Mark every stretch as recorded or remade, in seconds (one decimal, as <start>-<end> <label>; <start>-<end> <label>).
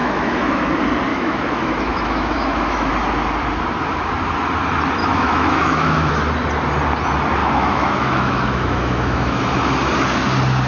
0.0-0.6 remade; 0.6-1.1 recorded; 1.1-2.9 remade; 2.9-5.0 recorded; 5.0-6.1 remade; 6.1-7.4 recorded; 7.4-9.4 remade; 9.4-10.7 recorded